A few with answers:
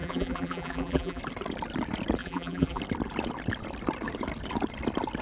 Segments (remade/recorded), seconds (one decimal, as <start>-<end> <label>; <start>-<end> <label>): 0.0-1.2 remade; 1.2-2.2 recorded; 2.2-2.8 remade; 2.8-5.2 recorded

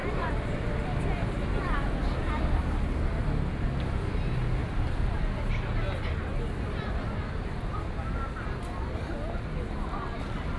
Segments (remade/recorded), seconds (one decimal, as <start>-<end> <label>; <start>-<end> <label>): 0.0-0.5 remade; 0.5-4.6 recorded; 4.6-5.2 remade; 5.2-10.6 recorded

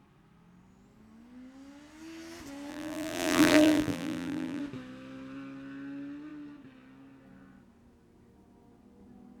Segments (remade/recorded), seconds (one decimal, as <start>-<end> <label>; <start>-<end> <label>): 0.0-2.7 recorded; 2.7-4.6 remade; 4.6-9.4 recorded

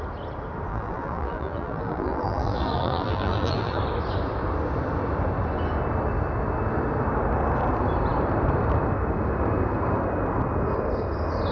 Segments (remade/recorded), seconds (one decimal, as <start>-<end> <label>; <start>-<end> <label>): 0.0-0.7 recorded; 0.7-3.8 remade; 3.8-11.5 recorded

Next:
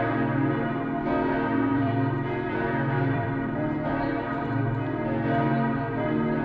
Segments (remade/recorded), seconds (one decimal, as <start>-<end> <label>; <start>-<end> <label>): 0.0-1.7 recorded; 1.7-4.6 remade; 4.6-6.4 recorded

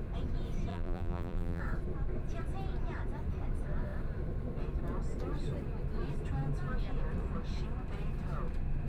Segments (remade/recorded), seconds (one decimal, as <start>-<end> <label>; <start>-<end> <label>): 0.0-0.7 recorded; 0.7-1.6 remade; 1.6-8.9 recorded